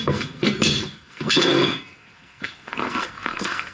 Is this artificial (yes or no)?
yes